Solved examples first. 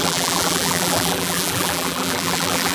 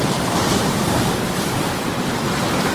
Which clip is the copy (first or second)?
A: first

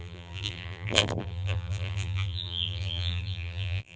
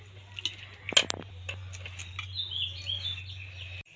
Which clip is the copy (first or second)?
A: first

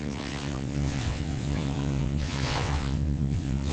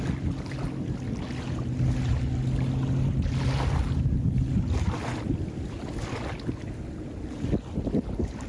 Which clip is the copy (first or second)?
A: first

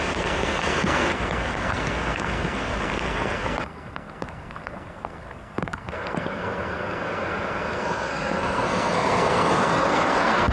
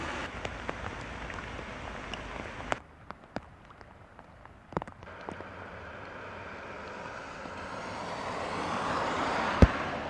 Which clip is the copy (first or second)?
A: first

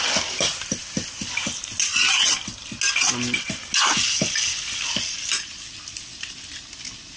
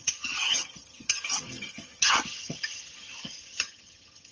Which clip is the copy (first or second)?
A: second